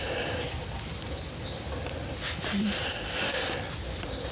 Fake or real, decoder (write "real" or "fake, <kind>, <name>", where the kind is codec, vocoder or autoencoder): real